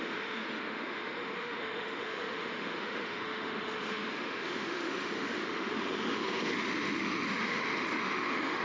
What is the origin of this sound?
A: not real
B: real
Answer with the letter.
A